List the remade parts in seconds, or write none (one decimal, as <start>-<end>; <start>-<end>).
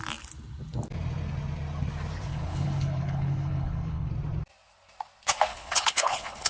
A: 2.3-4.1; 5.5-6.5